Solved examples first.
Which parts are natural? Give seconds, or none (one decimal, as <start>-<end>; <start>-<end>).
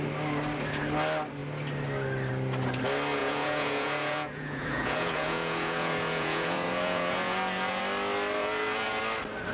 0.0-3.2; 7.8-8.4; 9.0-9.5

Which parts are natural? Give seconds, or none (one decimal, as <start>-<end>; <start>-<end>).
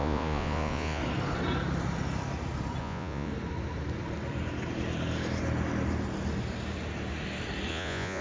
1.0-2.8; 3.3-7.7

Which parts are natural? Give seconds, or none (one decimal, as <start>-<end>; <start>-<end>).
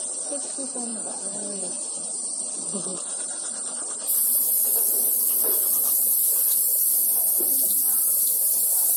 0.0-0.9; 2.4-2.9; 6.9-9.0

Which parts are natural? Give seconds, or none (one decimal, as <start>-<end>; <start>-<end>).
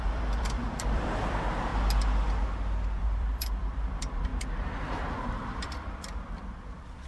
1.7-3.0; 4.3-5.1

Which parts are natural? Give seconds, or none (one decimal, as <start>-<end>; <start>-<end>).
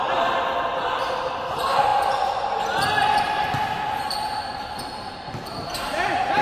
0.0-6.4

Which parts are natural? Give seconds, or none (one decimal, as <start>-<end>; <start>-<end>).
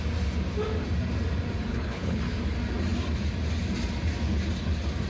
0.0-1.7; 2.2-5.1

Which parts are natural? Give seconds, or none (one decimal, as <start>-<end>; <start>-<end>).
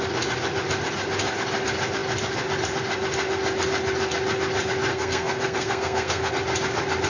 0.0-4.9; 6.3-7.1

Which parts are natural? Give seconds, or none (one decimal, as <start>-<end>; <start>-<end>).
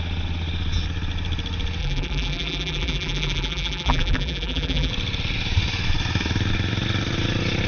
0.0-1.8; 4.9-7.7